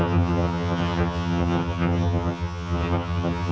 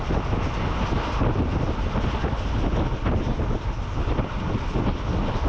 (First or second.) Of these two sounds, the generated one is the first